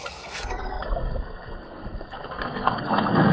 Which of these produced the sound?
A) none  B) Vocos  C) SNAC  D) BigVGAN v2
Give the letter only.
C